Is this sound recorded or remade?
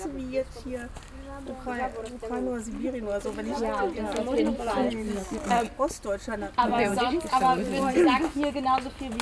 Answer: recorded